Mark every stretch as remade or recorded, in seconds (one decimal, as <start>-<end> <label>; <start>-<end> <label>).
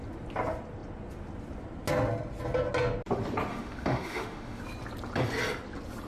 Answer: 0.0-3.5 recorded; 3.5-4.6 remade; 4.6-6.1 recorded